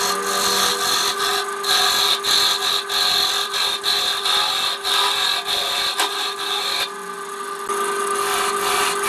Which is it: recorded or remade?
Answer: recorded